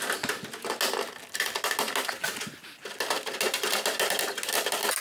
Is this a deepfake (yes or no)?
no